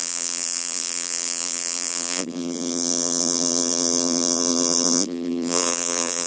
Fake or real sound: fake